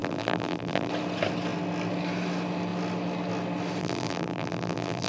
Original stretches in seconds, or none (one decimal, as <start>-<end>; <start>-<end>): 0.9-3.8